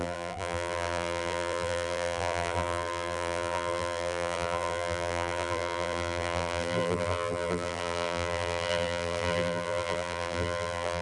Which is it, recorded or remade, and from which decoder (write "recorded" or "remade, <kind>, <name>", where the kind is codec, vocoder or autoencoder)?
remade, vocoder, BigVGAN v2